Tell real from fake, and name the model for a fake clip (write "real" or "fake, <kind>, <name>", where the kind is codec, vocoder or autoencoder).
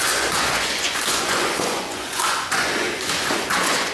fake, vocoder, Vocos